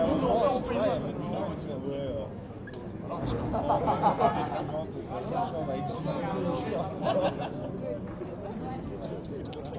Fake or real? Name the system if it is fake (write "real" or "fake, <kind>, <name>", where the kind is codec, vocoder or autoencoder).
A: real